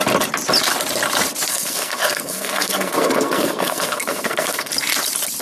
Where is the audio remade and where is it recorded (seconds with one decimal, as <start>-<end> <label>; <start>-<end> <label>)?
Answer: 0.0-1.5 recorded; 1.5-4.7 remade; 4.7-5.4 recorded